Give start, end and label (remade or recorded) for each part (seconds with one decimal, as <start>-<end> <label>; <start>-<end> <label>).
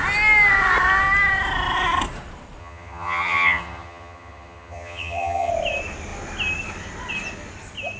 0.0-2.6 recorded; 2.6-5.5 remade; 5.5-8.0 recorded